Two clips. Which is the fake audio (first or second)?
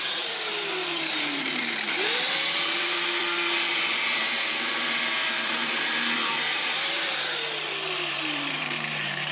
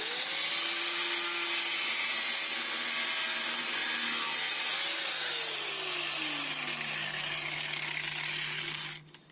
first